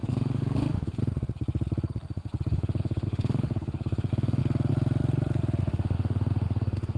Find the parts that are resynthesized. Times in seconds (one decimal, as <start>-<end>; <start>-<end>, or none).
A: 0.0-1.0; 2.5-4.4; 5.7-7.0